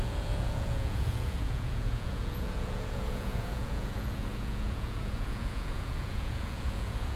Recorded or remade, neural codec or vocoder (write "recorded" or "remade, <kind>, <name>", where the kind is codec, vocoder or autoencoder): remade, vocoder, Vocos